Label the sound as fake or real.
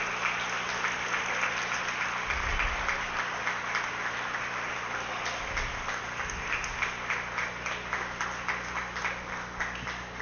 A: real